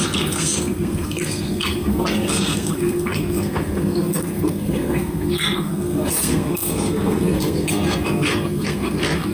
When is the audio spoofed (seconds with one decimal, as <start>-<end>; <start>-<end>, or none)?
0.0-9.3

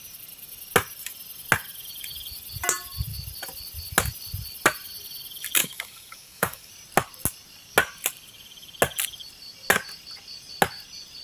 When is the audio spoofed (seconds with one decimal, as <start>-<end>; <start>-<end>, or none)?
5.6-6.7

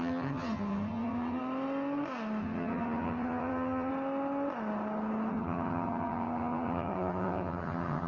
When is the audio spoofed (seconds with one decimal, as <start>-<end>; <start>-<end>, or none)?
0.0-1.4; 2.4-3.9; 5.3-8.1

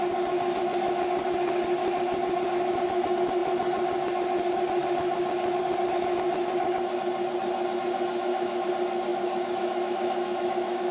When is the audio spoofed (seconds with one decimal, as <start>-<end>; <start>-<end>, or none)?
8.1-8.7; 9.1-10.9